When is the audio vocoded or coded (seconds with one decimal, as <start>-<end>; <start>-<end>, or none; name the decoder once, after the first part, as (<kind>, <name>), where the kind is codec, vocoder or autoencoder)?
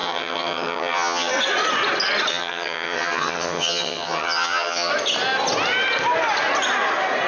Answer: 0.0-1.3 (vocoder, HiFi-GAN); 2.3-4.9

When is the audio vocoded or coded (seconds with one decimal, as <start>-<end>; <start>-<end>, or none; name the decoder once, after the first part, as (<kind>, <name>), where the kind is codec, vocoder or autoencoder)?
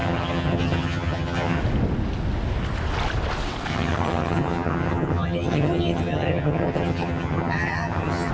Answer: 0.0-1.6 (vocoder, HiFi-GAN); 3.7-8.3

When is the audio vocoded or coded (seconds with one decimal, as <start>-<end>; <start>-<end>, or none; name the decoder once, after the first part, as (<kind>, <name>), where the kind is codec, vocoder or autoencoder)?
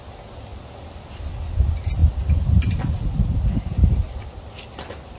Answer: none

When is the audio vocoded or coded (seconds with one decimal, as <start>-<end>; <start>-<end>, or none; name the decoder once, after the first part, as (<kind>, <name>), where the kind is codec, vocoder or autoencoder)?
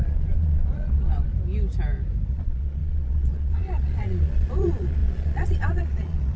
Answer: 0.0-1.3 (vocoder, Vocos); 2.3-6.4